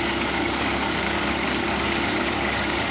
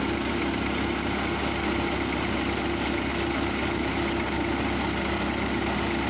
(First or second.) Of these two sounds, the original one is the second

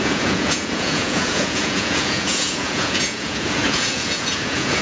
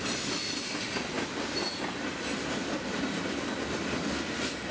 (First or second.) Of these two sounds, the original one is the second